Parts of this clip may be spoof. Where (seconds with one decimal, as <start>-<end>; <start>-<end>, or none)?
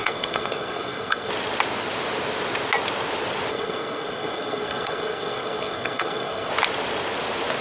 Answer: 0.0-1.3; 3.5-6.5